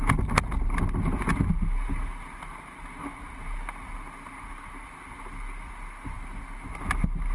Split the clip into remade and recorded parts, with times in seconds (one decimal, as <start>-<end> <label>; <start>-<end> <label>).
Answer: 0.0-7.3 recorded